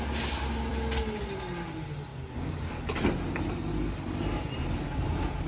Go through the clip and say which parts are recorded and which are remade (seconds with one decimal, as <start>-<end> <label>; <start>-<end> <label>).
0.0-5.5 recorded